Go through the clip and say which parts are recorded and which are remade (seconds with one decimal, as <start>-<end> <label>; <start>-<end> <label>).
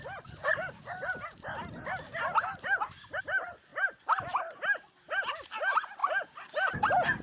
0.0-3.7 recorded; 3.7-4.4 remade; 4.4-7.2 recorded